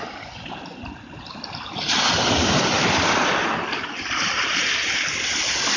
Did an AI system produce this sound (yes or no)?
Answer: no